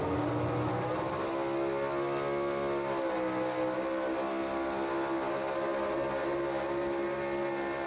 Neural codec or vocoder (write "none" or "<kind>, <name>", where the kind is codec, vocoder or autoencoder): none